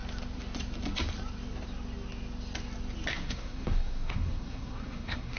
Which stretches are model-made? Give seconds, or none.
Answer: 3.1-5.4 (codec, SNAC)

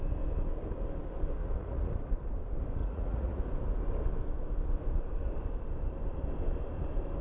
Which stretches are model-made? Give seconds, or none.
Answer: 1.4-1.9 (vocoder, Vocos); 2.8-3.4

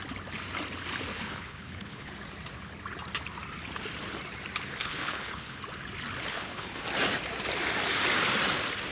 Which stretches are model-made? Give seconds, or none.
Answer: 1.1-2.1 (codec, HILCodec); 4.8-5.6; 6.3-6.8

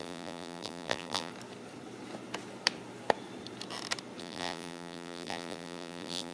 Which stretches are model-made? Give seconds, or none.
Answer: 0.0-1.3 (vocoder, BigVGAN v2); 4.2-6.3

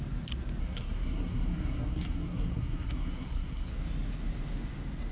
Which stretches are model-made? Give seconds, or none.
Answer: 0.6-3.7 (codec, SNAC)

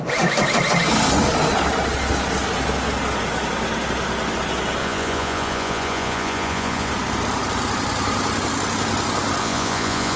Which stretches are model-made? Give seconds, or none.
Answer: 4.8-6.9 (vocoder, Vocos); 9.4-10.2

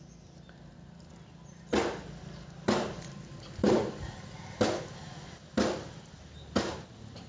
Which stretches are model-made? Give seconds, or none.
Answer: none